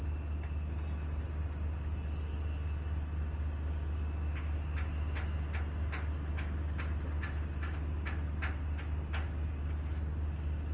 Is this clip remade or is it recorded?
recorded